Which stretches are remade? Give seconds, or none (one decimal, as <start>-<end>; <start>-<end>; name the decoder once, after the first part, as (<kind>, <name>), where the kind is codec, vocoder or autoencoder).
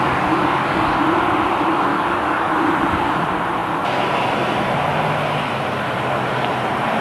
0.4-1.0 (codec, DAC); 1.9-2.5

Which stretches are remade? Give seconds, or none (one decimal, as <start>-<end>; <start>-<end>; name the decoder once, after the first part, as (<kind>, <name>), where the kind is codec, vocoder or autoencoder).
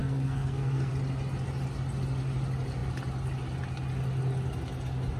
0.0-0.9 (codec, SNAC)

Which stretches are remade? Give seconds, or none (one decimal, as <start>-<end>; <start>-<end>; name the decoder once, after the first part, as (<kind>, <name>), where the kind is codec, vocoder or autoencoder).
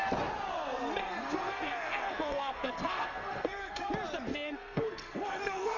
1.0-3.9 (codec, SNAC); 4.3-5.8